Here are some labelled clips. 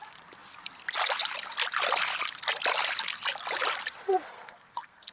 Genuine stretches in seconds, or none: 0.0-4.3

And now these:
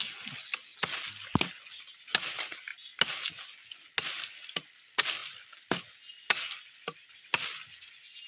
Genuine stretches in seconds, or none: 0.0-8.3

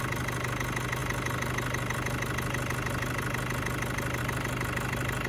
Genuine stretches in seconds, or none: 0.0-5.3